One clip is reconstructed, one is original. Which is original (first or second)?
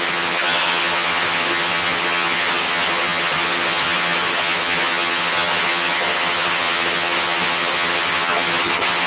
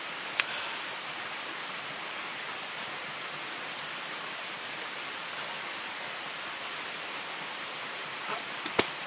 second